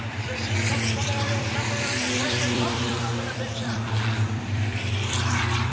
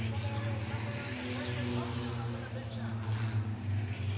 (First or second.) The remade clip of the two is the first